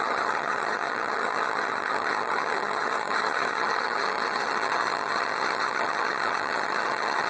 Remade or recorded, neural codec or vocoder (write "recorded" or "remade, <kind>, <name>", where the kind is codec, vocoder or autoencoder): remade, vocoder, HiFi-GAN